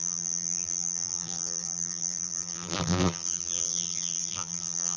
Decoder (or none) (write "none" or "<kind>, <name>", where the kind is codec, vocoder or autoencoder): vocoder, BigVGAN v2